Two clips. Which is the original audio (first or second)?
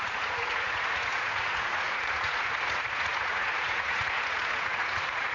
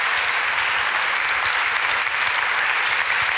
second